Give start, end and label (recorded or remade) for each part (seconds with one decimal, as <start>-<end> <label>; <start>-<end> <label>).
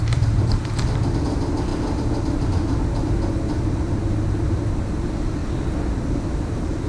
0.0-5.4 remade; 5.4-5.9 recorded; 5.9-6.9 remade